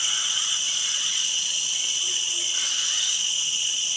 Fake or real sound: fake